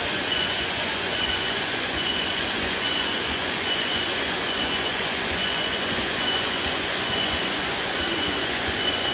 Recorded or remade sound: remade